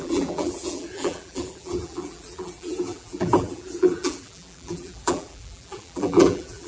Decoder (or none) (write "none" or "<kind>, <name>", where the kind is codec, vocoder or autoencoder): vocoder, BigVGAN v2